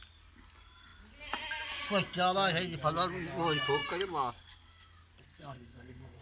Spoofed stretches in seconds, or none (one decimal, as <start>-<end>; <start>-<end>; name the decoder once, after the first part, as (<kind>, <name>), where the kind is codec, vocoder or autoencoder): 5.3-6.2 (codec, SNAC)